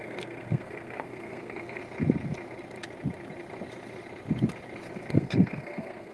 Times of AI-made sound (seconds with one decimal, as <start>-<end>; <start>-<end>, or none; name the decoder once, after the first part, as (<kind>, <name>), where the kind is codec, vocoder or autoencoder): 0.0-1.8 (codec, SNAC); 5.1-6.1